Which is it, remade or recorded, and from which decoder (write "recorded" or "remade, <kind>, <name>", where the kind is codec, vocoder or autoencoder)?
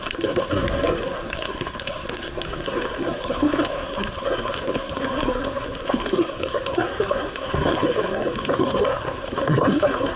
remade, codec, SNAC